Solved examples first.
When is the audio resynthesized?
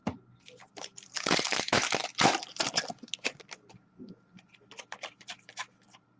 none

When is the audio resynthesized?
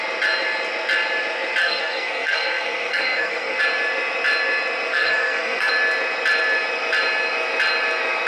1.6-3.6 (codec, SNAC); 4.9-5.7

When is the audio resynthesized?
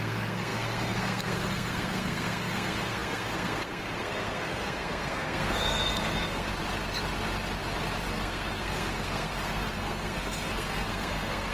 0.0-6.5 (codec, SNAC); 8.1-11.5